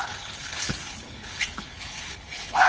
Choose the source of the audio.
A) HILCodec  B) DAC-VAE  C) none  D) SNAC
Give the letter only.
A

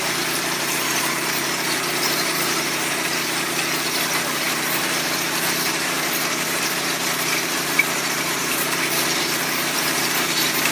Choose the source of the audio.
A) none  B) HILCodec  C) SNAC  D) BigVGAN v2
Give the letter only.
D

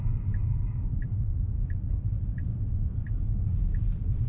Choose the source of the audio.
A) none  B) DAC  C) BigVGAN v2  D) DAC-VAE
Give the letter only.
C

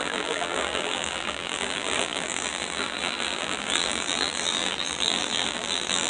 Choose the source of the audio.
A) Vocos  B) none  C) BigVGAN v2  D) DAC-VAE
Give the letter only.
C